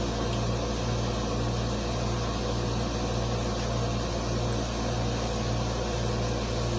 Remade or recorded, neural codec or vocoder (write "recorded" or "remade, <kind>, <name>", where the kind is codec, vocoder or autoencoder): recorded